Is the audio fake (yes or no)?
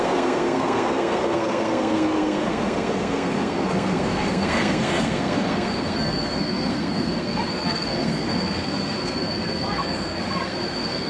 yes